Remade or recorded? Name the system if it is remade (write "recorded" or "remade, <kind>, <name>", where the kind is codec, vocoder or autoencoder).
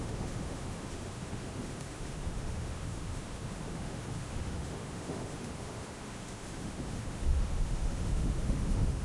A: remade, autoencoder, DAC-VAE